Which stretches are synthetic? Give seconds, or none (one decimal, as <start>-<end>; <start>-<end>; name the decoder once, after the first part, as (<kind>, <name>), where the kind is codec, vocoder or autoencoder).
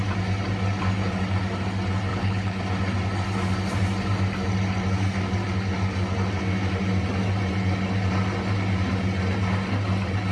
2.1-2.6 (codec, HILCodec)